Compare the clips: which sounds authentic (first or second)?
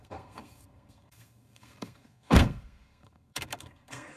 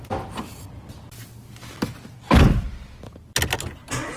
second